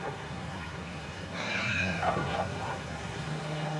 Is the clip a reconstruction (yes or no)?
yes